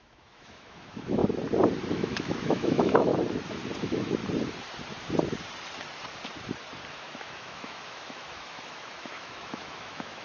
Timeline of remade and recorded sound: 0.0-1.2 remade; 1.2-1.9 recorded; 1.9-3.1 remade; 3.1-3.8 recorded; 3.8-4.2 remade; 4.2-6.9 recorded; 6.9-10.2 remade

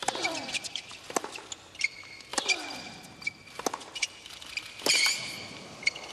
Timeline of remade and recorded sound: 0.0-6.1 recorded

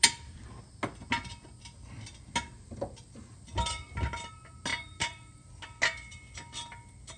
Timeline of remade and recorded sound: 0.0-4.7 recorded; 4.7-5.5 remade; 5.5-7.2 recorded

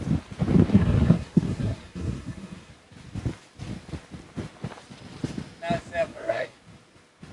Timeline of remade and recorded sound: 0.0-0.7 recorded; 0.7-2.7 remade; 2.7-6.1 recorded; 6.1-6.6 remade; 6.6-7.3 recorded

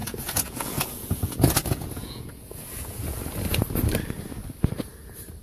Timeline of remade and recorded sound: 0.0-3.2 remade; 3.2-5.4 recorded

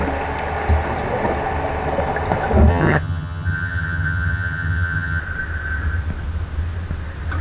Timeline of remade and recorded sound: 0.0-2.7 recorded; 2.7-5.2 remade; 5.2-7.4 recorded